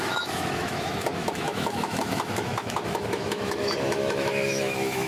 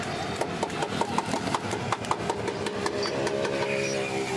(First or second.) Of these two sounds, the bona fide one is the second